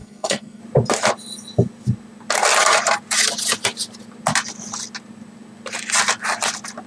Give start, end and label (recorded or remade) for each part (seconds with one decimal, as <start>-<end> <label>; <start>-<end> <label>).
0.0-0.6 remade; 0.6-6.9 recorded